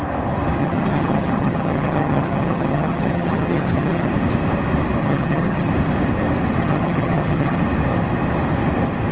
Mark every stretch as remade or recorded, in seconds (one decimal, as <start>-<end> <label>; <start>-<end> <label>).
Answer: 0.0-0.6 recorded; 0.6-4.1 remade; 4.1-5.0 recorded; 5.0-5.7 remade; 5.7-6.6 recorded; 6.6-7.6 remade; 7.6-9.1 recorded